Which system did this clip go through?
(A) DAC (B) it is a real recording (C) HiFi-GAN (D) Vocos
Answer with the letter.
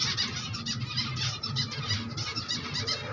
B